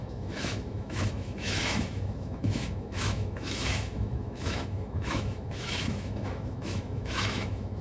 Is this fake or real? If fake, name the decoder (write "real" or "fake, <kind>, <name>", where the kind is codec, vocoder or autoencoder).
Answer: fake, autoencoder, DAC-VAE